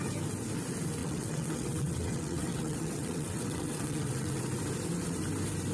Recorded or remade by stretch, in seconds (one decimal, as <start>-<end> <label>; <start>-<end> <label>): 0.0-1.0 recorded; 1.0-4.4 remade; 4.4-5.7 recorded